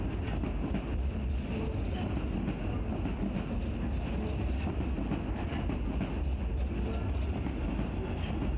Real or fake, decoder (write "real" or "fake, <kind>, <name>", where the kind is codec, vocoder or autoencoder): real